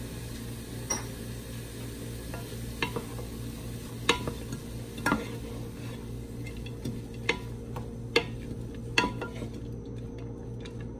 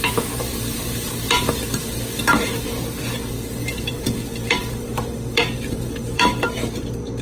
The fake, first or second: second